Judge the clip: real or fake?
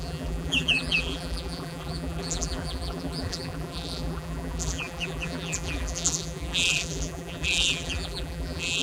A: fake